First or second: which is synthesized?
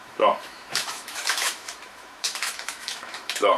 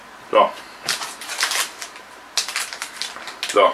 first